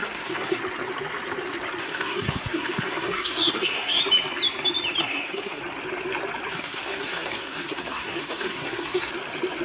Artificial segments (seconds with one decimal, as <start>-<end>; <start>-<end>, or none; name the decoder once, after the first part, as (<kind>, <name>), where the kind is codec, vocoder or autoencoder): 0.0-0.6 (codec, SNAC); 1.8-4.0; 5.0-5.6; 6.5-9.1